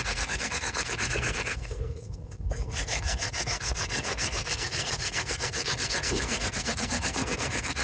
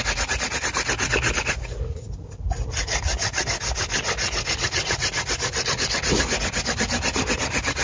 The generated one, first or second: first